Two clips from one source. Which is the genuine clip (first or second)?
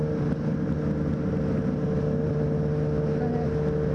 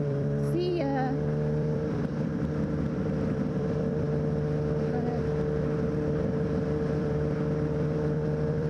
first